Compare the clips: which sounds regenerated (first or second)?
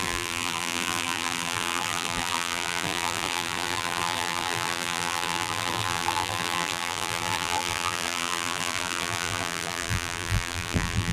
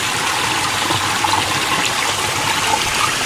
first